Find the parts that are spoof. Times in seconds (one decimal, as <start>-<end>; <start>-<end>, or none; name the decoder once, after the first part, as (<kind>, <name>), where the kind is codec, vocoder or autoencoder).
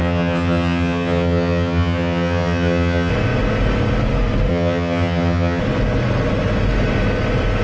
0.0-3.1 (vocoder, HiFi-GAN); 4.5-5.6